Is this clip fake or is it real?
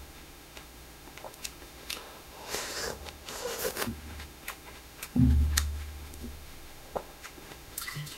fake